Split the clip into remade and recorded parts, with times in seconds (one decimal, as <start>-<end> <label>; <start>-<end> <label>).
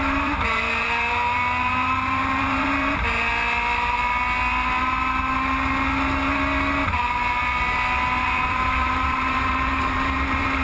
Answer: 0.0-3.3 remade; 3.3-8.2 recorded; 8.2-10.6 remade